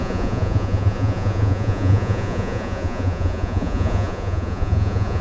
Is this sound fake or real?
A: fake